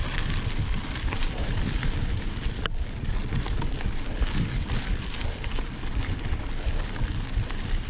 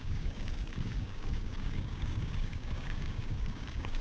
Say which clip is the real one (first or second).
first